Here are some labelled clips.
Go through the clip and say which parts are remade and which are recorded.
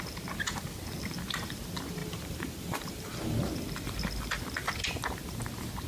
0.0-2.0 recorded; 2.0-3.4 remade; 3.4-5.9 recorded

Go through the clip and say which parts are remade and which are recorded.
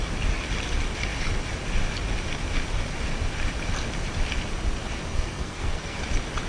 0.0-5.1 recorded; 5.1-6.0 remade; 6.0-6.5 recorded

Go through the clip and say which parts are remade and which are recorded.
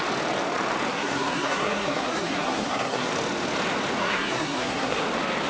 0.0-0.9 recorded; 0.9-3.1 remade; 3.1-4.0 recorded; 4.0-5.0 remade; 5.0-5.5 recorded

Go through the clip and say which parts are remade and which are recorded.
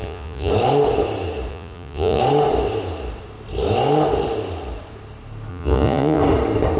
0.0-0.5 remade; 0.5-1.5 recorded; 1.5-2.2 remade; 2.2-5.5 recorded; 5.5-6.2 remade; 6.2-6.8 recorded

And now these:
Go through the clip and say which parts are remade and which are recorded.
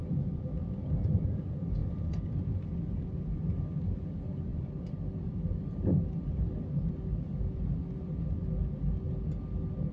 0.0-9.9 recorded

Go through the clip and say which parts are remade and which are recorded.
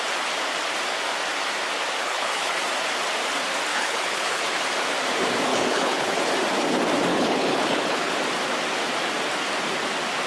0.0-2.0 recorded; 2.0-2.6 remade; 2.6-3.7 recorded; 3.7-4.4 remade; 4.4-5.5 recorded; 5.5-6.2 remade; 6.2-7.1 recorded; 7.1-8.1 remade; 8.1-10.3 recorded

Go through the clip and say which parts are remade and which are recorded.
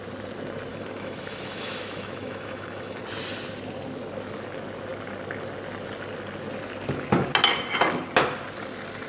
0.0-0.7 recorded; 0.7-3.0 remade; 3.0-9.1 recorded